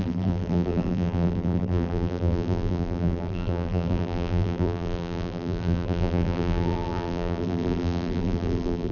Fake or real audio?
fake